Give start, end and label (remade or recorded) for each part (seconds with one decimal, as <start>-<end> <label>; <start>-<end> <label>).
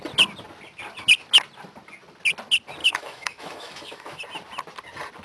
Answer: 0.0-2.8 recorded; 2.8-4.2 remade; 4.2-5.2 recorded